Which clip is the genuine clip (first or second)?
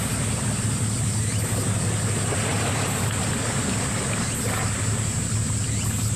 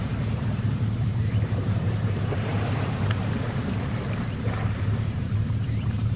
first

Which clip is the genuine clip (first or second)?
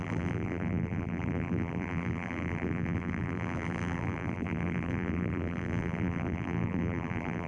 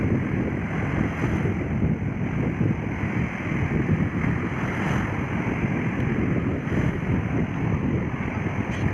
second